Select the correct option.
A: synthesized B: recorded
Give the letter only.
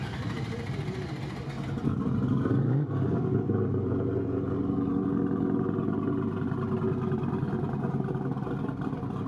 B